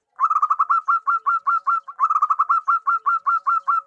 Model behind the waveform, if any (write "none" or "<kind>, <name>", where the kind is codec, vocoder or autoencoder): none